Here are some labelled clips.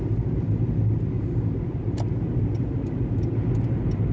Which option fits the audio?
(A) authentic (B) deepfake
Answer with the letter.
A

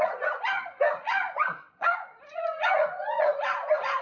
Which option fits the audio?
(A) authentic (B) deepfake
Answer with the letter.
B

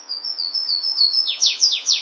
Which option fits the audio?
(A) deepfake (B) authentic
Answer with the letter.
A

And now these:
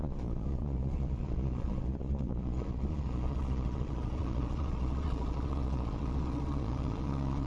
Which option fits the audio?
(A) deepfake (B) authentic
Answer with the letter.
A